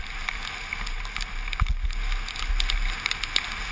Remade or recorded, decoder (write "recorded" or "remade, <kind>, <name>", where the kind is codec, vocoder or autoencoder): recorded